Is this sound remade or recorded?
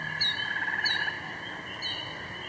recorded